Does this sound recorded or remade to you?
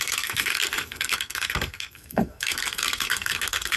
remade